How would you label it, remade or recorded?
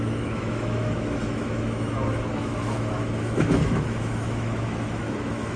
remade